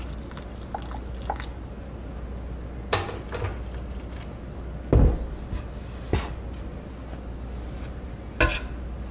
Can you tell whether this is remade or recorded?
recorded